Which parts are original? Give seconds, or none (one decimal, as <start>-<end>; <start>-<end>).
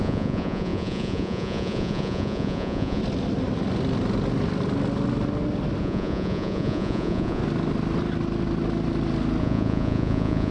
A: 3.0-5.8; 7.4-9.4